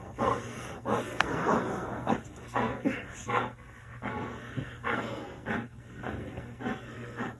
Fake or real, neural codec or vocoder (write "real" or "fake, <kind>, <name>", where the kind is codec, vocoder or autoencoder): fake, codec, SNAC